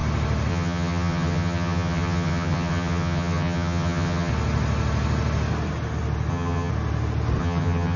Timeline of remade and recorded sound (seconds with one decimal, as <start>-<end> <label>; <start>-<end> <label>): 0.0-0.5 recorded; 0.5-4.3 remade; 4.3-6.3 recorded; 6.3-6.7 remade; 6.7-7.4 recorded; 7.4-8.0 remade